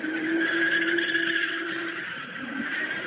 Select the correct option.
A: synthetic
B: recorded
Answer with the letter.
A